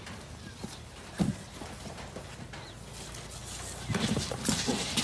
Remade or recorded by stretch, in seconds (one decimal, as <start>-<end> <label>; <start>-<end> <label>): 0.0-5.0 recorded